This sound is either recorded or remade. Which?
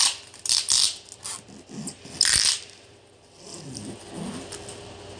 recorded